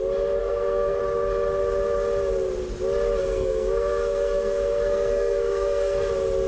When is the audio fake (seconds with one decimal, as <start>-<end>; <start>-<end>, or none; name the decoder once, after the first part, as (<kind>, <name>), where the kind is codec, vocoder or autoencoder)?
0.4-1.0 (codec, SNAC); 3.2-6.1